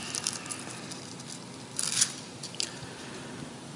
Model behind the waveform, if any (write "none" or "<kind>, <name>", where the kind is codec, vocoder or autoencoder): none